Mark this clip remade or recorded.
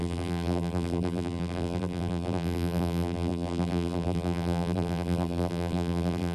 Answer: remade